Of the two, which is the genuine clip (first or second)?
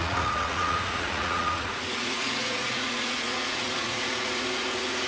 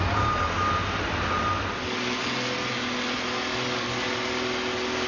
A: second